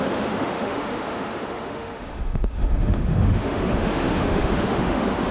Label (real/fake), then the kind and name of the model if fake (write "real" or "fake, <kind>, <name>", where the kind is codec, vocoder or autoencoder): fake, autoencoder, DAC-VAE